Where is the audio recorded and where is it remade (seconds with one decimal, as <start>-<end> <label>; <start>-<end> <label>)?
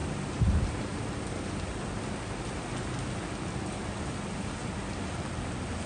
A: 0.0-5.9 recorded